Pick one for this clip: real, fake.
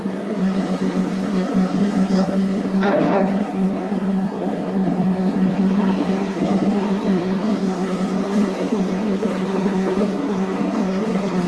fake